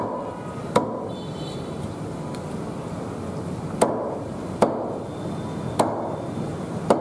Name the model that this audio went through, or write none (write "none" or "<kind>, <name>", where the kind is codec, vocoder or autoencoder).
none